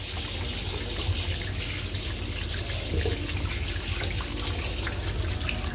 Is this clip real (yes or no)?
yes